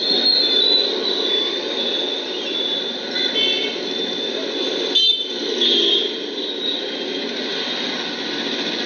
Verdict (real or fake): real